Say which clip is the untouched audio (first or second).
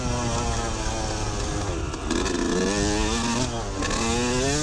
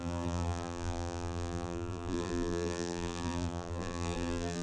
first